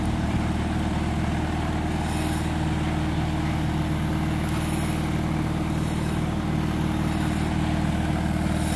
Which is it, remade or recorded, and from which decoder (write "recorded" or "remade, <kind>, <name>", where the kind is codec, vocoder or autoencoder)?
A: recorded